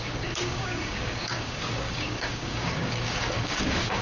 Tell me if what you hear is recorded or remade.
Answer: remade